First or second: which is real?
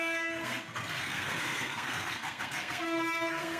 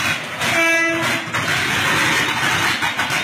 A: second